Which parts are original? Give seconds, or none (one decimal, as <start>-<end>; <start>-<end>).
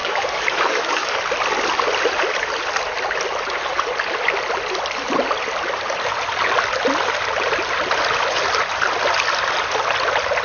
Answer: 1.2-10.4